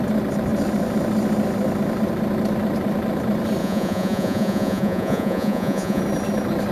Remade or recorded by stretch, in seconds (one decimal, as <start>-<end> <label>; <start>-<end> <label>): 0.0-3.6 recorded; 3.6-6.0 remade; 6.0-6.7 recorded